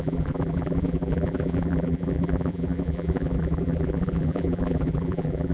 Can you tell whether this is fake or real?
fake